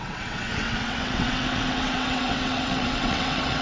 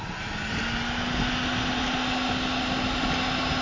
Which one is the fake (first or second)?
first